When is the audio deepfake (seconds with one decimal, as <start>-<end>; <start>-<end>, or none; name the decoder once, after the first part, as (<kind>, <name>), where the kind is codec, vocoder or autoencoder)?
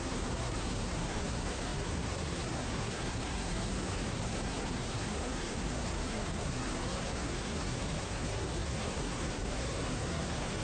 0.0-10.6 (codec, SNAC)